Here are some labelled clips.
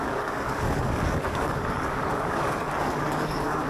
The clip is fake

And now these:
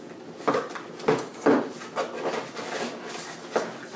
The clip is real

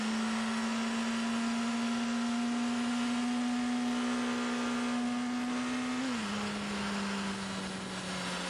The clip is real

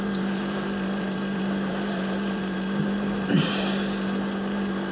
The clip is fake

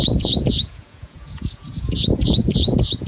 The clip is fake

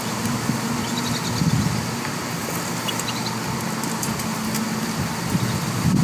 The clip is real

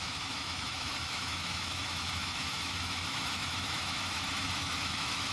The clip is fake